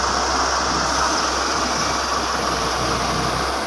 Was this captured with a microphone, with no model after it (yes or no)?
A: yes